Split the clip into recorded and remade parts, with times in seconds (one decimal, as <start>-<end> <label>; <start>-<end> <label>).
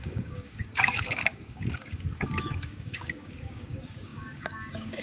0.0-5.0 remade